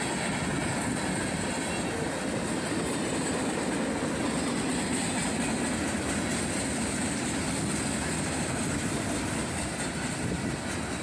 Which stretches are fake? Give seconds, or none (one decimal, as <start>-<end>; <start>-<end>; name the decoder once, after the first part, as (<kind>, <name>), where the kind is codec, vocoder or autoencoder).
none